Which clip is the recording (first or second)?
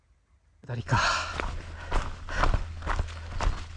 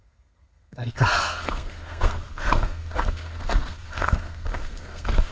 first